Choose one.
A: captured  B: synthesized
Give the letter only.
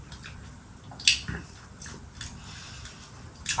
A